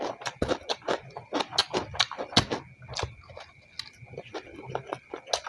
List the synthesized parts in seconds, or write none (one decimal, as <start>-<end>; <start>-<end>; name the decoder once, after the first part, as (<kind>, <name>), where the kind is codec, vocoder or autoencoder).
none